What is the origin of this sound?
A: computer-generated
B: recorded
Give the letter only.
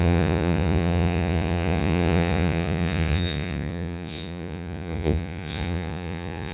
A